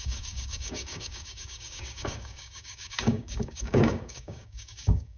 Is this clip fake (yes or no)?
yes